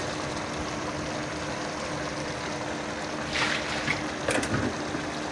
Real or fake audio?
real